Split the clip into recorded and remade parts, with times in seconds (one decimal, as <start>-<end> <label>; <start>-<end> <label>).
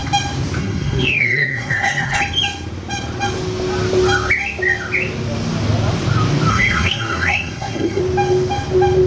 0.0-0.6 recorded; 0.6-2.2 remade; 2.2-6.5 recorded; 6.5-8.0 remade; 8.0-9.1 recorded